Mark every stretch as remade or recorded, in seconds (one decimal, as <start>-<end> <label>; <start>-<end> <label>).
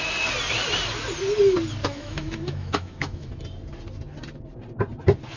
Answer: 0.0-1.8 recorded; 1.8-3.3 remade; 3.3-5.4 recorded